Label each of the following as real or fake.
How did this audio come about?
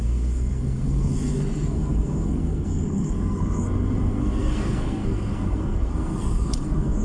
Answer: fake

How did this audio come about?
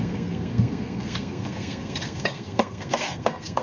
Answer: fake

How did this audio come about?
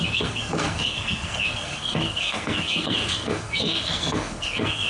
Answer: fake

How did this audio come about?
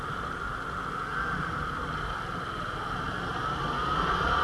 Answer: real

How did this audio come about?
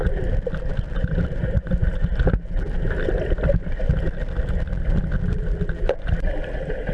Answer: real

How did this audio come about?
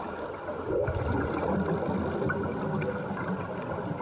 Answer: real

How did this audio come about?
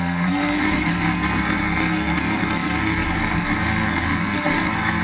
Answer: fake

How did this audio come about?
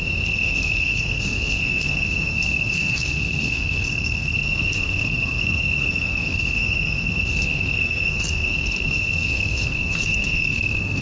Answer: fake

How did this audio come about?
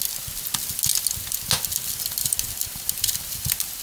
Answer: real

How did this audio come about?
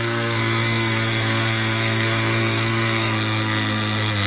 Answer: fake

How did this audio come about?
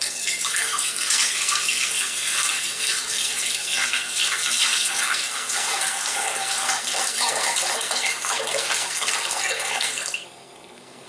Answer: fake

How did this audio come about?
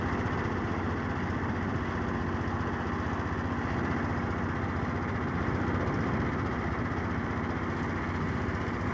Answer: real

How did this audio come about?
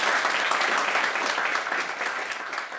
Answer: real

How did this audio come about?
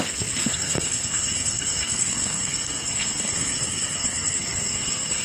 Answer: fake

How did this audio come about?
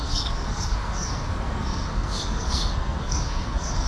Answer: fake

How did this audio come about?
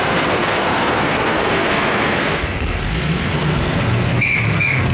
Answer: fake